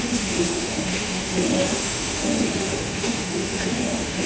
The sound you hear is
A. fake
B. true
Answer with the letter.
A